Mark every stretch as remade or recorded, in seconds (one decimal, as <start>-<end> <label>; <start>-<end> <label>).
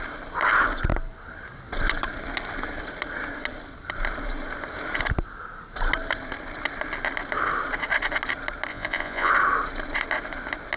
0.0-8.7 recorded; 8.7-9.3 remade; 9.3-10.8 recorded